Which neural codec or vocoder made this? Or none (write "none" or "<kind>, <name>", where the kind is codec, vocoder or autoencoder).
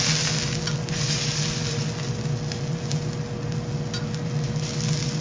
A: none